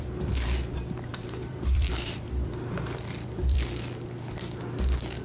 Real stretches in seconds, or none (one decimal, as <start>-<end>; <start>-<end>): 0.0-1.1; 3.7-5.2